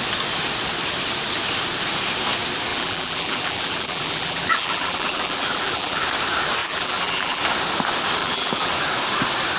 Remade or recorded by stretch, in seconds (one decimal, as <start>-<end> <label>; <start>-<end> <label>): 0.0-2.7 recorded; 2.7-6.0 remade; 6.0-6.6 recorded; 6.6-7.4 remade; 7.4-8.2 recorded; 8.2-8.7 remade; 8.7-9.6 recorded